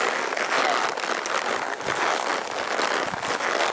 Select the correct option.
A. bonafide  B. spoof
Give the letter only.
A